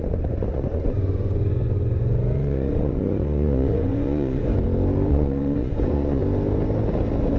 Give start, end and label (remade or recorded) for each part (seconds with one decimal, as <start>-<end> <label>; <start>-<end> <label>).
0.0-4.5 remade; 4.5-5.1 recorded; 5.1-6.2 remade; 6.2-7.4 recorded